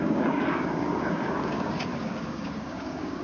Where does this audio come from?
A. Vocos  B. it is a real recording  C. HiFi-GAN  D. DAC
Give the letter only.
D